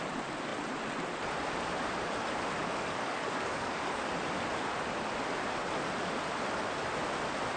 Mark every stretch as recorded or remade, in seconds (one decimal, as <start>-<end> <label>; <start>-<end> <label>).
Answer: 0.0-2.6 recorded; 2.6-4.1 remade; 4.1-7.6 recorded